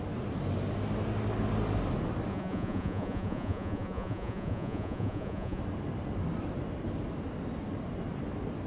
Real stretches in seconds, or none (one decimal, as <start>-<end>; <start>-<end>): 0.0-2.3; 5.6-8.7

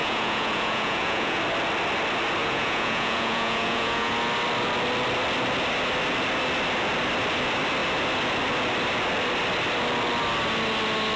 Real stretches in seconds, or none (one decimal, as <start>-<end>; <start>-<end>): 1.4-2.4; 4.1-11.2

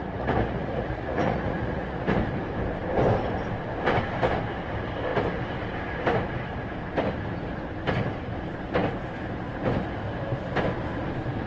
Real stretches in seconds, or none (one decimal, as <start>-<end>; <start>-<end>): 2.2-11.5

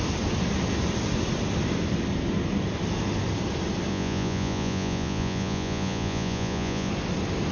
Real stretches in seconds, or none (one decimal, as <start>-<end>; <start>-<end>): 0.0-3.9; 6.9-7.5